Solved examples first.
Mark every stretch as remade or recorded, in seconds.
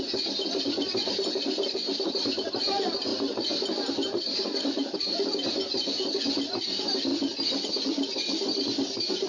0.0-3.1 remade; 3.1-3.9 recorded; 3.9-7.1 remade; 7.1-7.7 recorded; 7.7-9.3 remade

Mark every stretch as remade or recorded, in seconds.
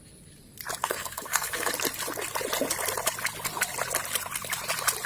0.0-0.8 recorded; 0.8-1.7 remade; 1.7-5.1 recorded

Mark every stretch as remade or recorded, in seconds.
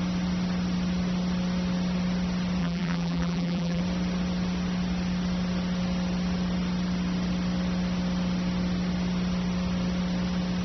0.0-2.6 recorded; 2.6-3.8 remade; 3.8-10.6 recorded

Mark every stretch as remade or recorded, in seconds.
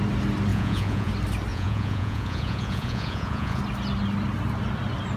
0.0-0.5 recorded; 0.5-1.1 remade; 1.1-1.5 recorded; 1.5-3.6 remade; 3.6-5.2 recorded